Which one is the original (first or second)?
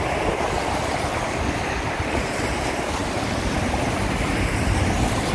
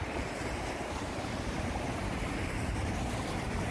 first